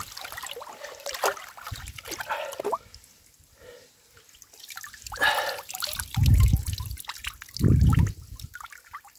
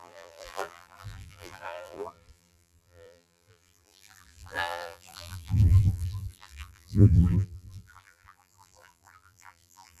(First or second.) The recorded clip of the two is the first